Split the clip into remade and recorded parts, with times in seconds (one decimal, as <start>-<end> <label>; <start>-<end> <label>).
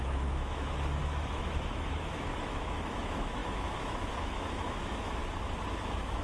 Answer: 0.0-5.2 remade; 5.2-5.8 recorded; 5.8-6.2 remade